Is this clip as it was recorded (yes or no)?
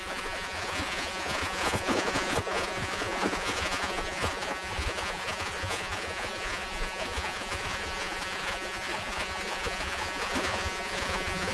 no